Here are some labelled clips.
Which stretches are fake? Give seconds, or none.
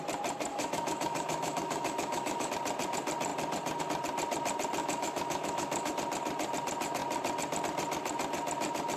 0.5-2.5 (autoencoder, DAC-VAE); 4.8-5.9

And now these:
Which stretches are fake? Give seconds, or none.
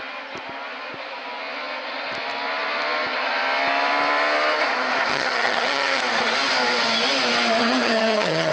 5.1-6.0 (vocoder, HiFi-GAN); 7.6-8.5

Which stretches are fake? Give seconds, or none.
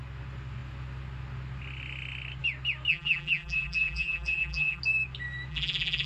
2.9-4.8 (vocoder, BigVGAN v2); 5.5-6.1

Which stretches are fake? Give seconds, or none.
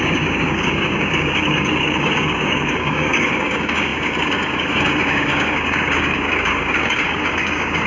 0.0-7.9 (codec, DAC)